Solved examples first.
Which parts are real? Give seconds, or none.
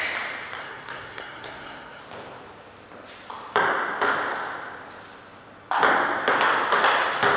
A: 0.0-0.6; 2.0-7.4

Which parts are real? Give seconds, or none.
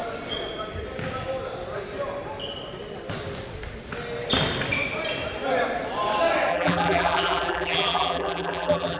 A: 0.0-6.5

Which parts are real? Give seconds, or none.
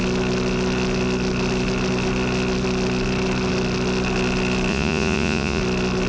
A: 0.0-4.7; 5.6-6.1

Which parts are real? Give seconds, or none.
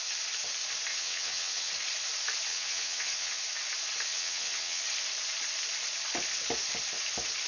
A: 0.0-0.9; 1.7-2.5; 3.4-4.1; 4.8-7.5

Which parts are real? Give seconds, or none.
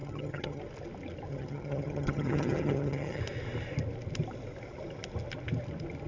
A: 0.6-1.3; 3.2-6.1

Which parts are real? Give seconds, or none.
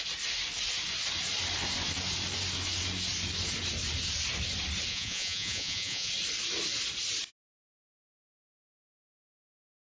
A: 0.0-4.9; 6.1-9.9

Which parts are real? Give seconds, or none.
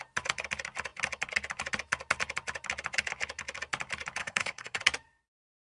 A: 0.0-4.2; 4.8-5.7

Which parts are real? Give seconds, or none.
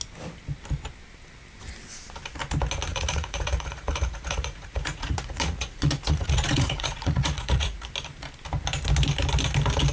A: 0.0-2.9; 7.8-9.9